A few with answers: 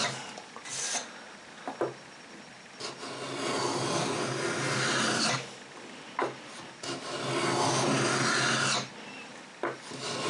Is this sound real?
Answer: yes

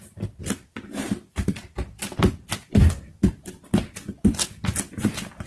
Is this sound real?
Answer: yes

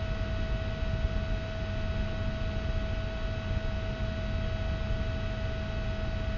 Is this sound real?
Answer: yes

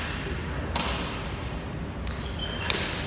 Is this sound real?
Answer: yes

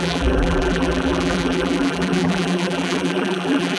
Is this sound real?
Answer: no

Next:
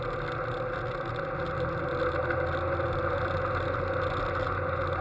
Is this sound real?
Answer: yes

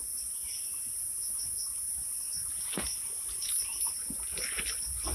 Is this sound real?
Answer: yes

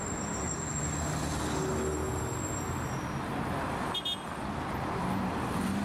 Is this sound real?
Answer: yes